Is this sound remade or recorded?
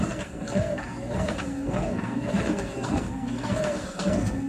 remade